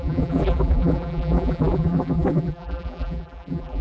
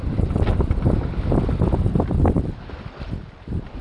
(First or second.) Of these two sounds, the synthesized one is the first